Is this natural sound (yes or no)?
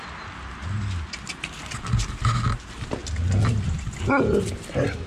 yes